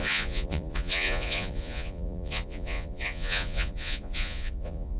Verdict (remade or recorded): remade